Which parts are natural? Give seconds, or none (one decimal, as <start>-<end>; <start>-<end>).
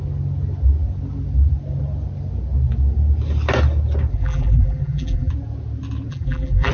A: 0.0-4.1; 5.3-6.1